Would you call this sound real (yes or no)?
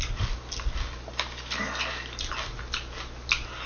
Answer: yes